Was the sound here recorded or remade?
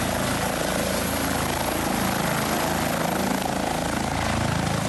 recorded